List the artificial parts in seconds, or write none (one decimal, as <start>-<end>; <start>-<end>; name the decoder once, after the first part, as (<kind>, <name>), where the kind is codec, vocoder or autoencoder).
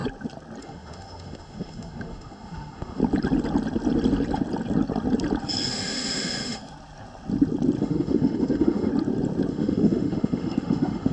0.6-3.0 (autoencoder, DAC-VAE); 5.7-6.6; 7.8-8.9; 9.5-11.1